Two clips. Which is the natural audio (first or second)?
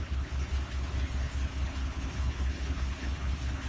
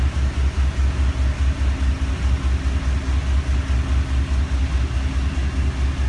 second